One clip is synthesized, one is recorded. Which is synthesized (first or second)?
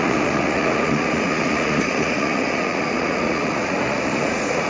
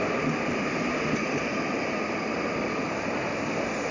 first